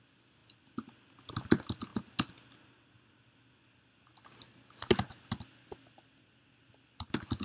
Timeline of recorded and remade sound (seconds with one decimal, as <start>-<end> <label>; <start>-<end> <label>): 0.0-7.4 recorded